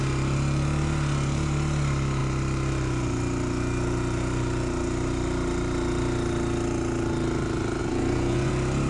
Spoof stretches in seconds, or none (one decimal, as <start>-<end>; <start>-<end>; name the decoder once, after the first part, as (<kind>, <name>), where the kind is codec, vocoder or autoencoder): 7.8-8.5 (vocoder, Vocos)